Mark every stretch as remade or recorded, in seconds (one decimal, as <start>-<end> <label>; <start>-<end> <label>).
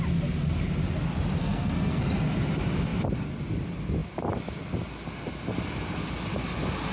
0.0-1.4 recorded; 1.4-2.0 remade; 2.0-6.9 recorded